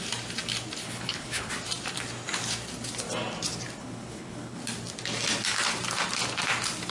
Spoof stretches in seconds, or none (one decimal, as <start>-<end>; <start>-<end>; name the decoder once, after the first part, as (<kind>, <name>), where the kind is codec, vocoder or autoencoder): 0.8-1.5 (codec, HILCodec); 3.8-4.6